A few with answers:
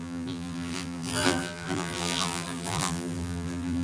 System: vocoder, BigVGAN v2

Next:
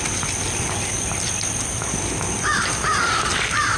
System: none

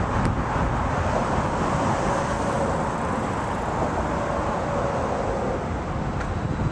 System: none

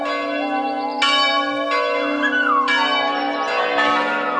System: none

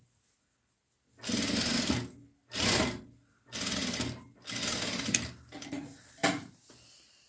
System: none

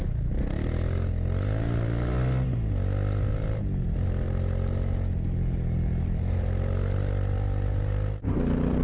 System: none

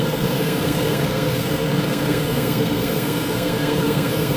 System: codec, SNAC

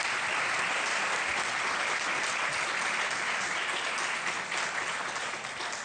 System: none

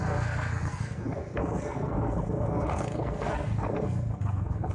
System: codec, SNAC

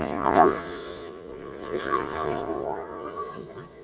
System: vocoder, Vocos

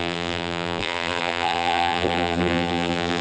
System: vocoder, BigVGAN v2